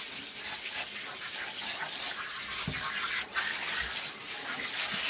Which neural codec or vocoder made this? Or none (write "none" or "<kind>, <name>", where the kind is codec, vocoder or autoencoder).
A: none